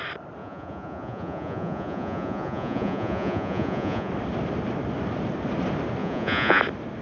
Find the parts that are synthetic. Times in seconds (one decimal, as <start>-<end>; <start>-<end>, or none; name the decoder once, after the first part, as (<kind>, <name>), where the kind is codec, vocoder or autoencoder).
0.4-4.1 (vocoder, Vocos); 6.0-6.6